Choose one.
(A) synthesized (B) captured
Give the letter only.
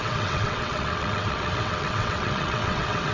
A